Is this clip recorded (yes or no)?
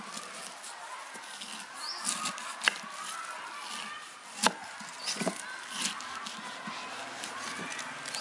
yes